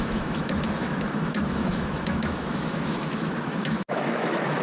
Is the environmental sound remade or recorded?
remade